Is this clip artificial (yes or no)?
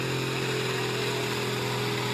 no